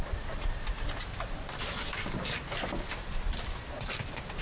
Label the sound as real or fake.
real